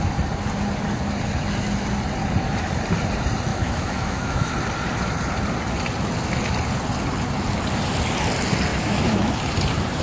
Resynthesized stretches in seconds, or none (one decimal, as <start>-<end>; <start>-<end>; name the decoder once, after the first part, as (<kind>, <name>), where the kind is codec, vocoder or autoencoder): 3.5-4.5 (autoencoder, DAC-VAE); 8.7-9.3